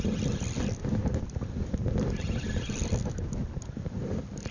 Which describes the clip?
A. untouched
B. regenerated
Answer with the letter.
A